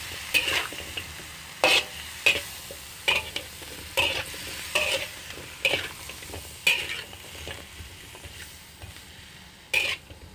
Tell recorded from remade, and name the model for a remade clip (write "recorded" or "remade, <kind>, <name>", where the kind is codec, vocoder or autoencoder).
recorded